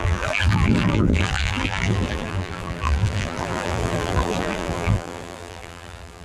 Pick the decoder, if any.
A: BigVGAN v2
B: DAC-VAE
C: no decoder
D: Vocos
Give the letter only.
A